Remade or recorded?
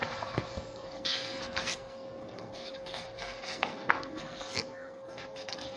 remade